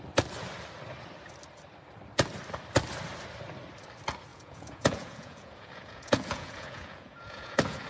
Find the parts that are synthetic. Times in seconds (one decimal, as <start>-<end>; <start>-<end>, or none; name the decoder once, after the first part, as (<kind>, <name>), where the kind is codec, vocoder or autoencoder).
4.3-7.9 (vocoder, Vocos)